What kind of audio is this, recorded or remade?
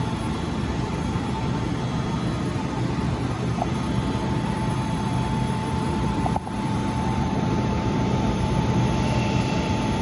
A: remade